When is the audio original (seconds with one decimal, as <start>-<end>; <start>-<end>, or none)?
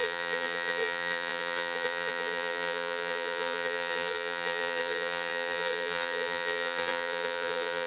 none